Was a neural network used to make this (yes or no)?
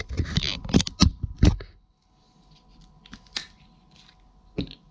no